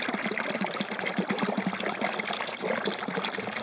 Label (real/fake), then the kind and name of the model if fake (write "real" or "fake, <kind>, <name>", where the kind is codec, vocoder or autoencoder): real